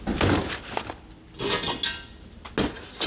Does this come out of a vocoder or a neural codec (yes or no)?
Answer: no